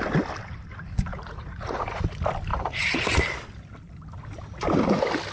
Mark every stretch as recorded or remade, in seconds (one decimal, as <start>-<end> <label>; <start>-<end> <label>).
0.0-1.1 recorded; 1.1-2.0 remade; 2.0-2.5 recorded; 2.5-3.2 remade; 3.2-5.3 recorded